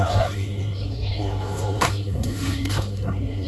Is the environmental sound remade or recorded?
remade